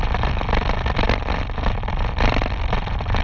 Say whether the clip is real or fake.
fake